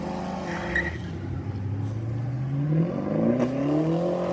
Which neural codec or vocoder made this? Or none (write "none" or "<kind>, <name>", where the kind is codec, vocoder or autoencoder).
none